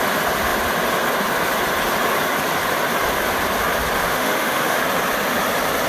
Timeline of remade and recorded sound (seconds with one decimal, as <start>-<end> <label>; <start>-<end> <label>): 0.0-4.0 recorded; 4.0-4.8 remade; 4.8-5.9 recorded